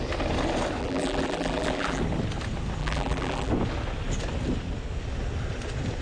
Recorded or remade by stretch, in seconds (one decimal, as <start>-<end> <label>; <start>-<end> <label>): 0.0-0.8 recorded; 0.8-2.0 remade; 2.0-2.8 recorded; 2.8-3.5 remade; 3.5-6.0 recorded

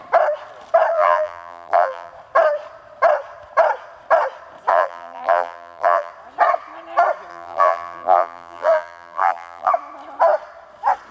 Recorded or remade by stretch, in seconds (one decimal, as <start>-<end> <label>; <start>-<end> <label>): 0.0-0.9 recorded; 0.9-2.1 remade; 2.1-4.7 recorded; 4.7-6.1 remade; 6.1-7.3 recorded; 7.3-9.7 remade; 9.7-11.1 recorded

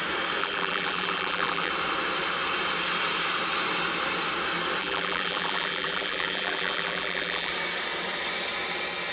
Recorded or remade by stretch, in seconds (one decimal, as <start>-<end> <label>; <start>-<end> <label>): 0.0-0.4 recorded; 0.4-1.7 remade; 1.7-4.8 recorded; 4.8-7.5 remade; 7.5-9.1 recorded

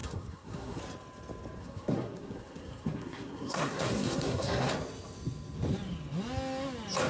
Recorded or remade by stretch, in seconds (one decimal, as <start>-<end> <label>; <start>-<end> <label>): 0.0-0.8 remade; 0.8-1.6 recorded; 1.6-4.7 remade; 4.7-7.1 recorded

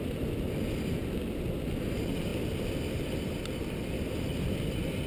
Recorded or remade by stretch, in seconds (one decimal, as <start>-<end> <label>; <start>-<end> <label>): 0.0-5.1 recorded

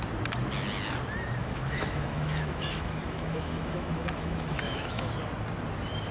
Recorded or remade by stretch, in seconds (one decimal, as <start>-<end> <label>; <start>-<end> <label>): 0.0-1.4 recorded; 1.4-5.1 remade; 5.1-6.1 recorded